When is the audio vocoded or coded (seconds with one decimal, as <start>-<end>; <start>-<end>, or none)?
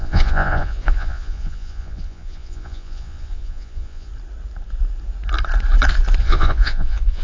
0.0-4.1; 6.2-7.2